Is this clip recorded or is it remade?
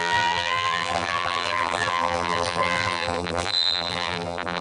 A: remade